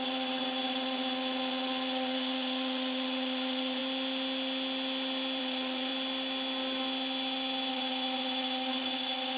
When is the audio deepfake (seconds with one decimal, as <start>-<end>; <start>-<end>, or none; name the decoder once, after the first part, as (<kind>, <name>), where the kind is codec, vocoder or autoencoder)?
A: 0.0-3.8 (vocoder, Vocos); 5.4-5.9; 7.7-9.4